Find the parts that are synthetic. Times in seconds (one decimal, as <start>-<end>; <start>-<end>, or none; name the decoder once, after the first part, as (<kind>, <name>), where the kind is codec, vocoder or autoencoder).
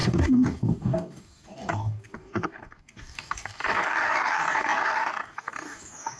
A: 0.0-6.2 (codec, DAC)